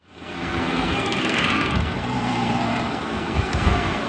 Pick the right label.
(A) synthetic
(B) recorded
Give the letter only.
A